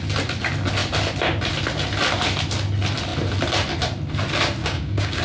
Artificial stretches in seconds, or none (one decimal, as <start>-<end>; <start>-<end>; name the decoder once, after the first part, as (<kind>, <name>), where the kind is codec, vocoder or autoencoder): 4.6-5.2 (codec, DAC)